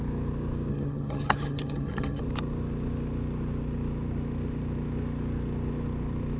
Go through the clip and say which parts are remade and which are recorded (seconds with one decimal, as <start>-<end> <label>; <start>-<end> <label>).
0.0-0.7 recorded; 0.7-2.2 remade; 2.2-6.4 recorded